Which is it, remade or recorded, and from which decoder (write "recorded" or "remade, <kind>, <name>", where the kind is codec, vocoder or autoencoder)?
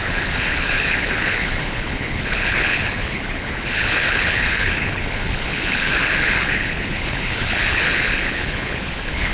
remade, codec, HILCodec